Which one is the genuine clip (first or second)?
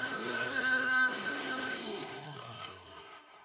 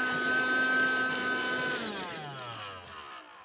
second